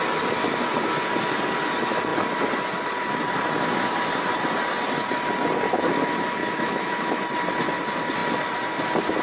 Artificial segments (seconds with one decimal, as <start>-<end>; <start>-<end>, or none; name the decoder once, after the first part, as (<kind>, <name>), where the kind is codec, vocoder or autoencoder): 6.4-7.2 (autoencoder, DAC-VAE)